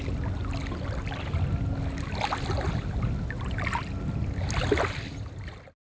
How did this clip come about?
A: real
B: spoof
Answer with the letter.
A